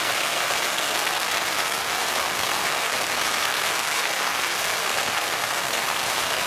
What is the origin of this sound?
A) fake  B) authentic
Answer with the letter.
A